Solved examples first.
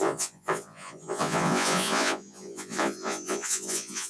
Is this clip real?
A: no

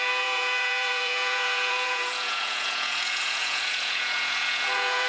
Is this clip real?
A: no